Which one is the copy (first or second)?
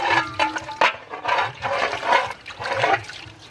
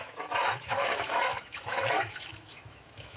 second